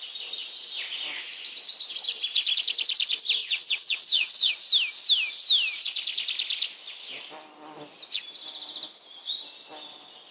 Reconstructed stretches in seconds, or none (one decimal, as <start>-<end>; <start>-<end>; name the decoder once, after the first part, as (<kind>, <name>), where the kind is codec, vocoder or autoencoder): 3.4-4.5 (vocoder, WaveNeXt)